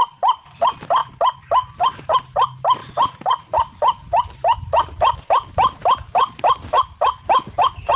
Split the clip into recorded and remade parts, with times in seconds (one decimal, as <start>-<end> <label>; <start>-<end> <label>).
0.0-1.0 recorded; 1.0-2.2 remade; 2.2-2.8 recorded; 2.8-5.8 remade; 5.8-6.2 recorded; 6.2-7.5 remade; 7.5-8.0 recorded